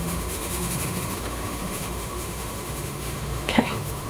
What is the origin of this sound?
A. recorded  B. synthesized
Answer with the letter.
B